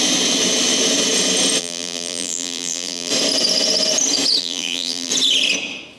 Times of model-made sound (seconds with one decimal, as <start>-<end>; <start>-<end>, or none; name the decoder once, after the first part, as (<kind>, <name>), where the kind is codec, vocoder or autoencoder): 1.6-3.1 (vocoder, BigVGAN v2); 4.4-5.1